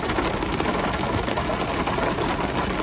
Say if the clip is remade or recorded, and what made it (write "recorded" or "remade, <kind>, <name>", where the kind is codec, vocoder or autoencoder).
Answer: recorded